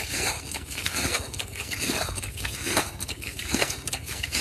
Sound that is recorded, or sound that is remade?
remade